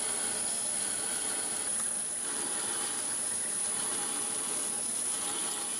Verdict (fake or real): real